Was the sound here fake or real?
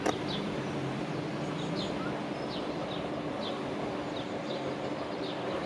real